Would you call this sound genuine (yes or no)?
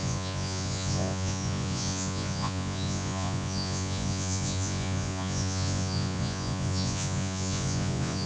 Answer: no